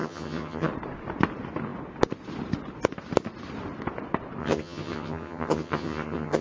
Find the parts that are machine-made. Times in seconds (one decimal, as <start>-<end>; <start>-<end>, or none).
0.0-0.7; 4.4-6.4